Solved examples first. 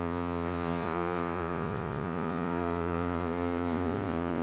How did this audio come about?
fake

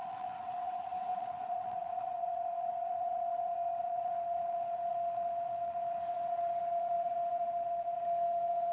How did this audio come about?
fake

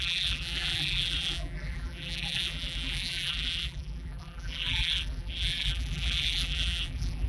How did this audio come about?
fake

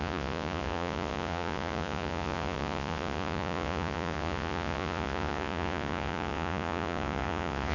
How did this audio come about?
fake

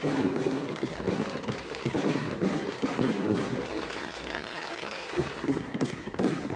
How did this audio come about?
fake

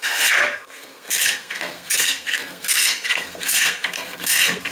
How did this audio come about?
fake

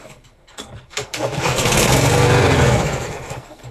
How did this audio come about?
fake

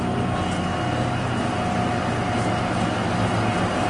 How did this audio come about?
real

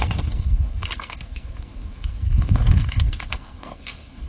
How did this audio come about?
fake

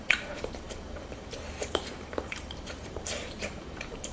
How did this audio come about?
fake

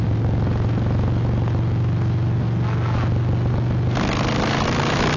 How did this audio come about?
real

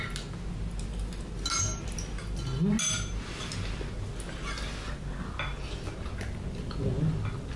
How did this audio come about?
real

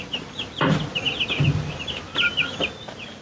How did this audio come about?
real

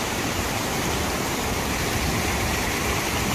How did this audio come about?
real